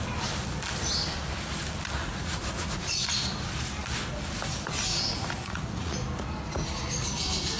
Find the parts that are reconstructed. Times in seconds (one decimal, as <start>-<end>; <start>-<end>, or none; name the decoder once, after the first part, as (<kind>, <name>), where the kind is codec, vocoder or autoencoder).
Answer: 2.0-3.1 (vocoder, Vocos); 4.9-6.0